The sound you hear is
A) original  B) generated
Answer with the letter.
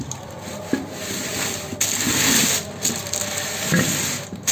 A